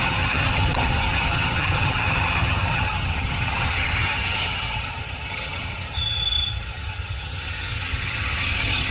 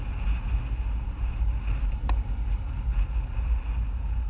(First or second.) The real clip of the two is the second